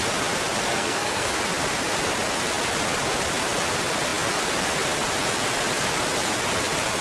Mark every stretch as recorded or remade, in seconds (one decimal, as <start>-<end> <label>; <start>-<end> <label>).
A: 0.0-0.7 recorded; 0.7-1.3 remade; 1.3-7.0 recorded